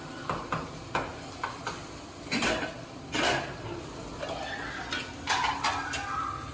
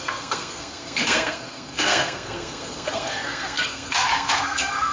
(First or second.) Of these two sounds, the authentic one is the first